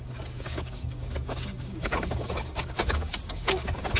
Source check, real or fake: fake